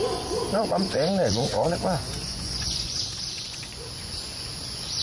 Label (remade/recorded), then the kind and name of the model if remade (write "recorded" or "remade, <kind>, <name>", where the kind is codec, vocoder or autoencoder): remade, vocoder, Vocos